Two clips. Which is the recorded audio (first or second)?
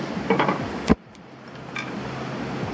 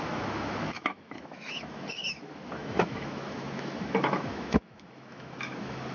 first